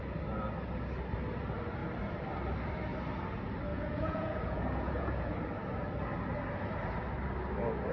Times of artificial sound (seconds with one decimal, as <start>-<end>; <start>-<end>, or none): 3.7-5.3